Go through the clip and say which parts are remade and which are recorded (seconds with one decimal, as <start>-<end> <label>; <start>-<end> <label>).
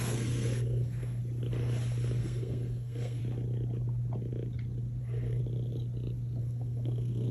0.0-1.2 remade; 1.2-2.2 recorded; 2.2-3.2 remade; 3.2-5.0 recorded; 5.0-5.4 remade; 5.4-6.4 recorded; 6.4-7.3 remade